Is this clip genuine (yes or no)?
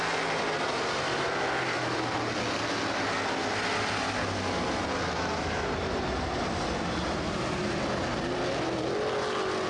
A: yes